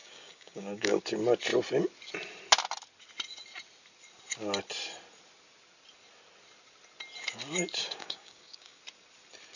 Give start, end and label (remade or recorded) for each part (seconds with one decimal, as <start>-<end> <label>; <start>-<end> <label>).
0.0-1.0 remade; 1.0-7.8 recorded; 7.8-8.8 remade; 8.8-9.6 recorded